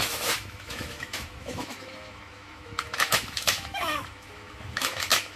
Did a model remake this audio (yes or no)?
yes